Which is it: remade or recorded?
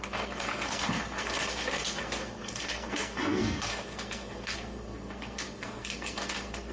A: remade